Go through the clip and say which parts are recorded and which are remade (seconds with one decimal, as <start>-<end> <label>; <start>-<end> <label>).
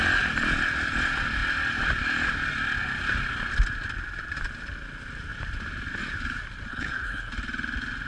0.0-6.7 recorded; 6.7-7.3 remade; 7.3-8.1 recorded